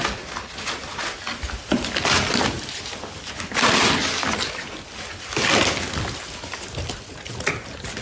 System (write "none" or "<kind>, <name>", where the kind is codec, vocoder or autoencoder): none